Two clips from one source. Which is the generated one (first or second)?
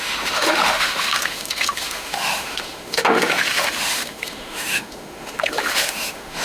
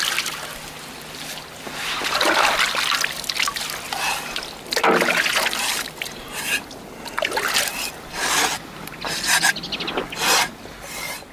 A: first